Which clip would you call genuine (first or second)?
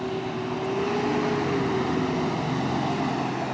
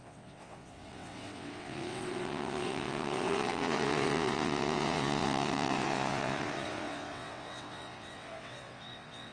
first